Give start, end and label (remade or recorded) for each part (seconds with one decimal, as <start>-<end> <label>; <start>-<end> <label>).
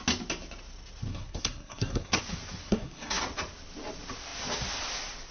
0.0-1.1 recorded; 1.1-2.2 remade; 2.2-2.6 recorded; 2.6-3.2 remade; 3.2-5.3 recorded